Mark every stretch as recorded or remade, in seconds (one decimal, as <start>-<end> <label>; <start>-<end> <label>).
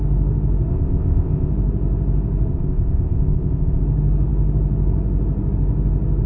0.0-0.7 recorded; 0.7-1.5 remade; 1.5-2.5 recorded; 2.5-3.8 remade; 3.8-6.3 recorded